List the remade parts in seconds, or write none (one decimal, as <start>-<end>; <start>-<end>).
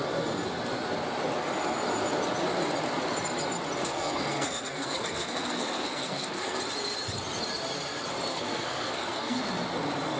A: 3.8-6.6; 8.3-9.4